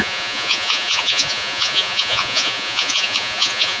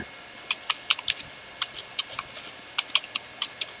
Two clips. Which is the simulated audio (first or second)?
first